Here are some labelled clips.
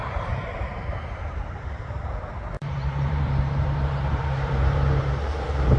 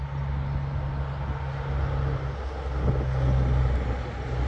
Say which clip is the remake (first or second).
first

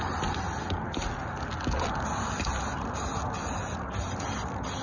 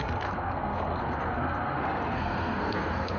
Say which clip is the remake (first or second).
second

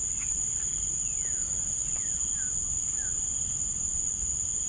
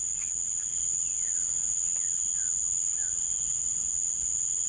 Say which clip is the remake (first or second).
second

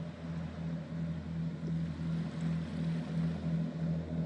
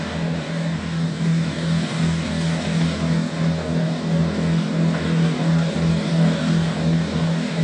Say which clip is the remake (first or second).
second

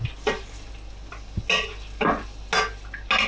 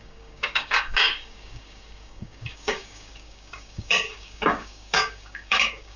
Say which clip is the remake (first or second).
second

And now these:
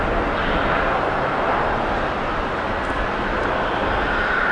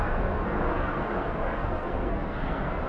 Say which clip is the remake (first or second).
second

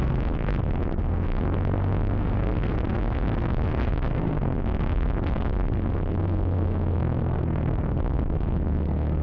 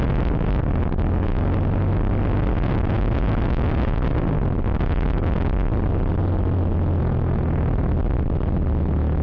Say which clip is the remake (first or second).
first